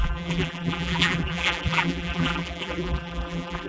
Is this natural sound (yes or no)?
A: no